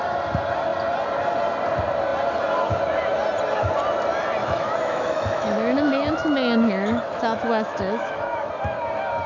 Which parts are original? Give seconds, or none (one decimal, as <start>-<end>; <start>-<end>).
0.0-4.4; 8.5-9.3